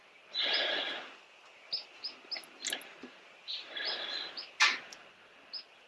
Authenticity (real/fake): real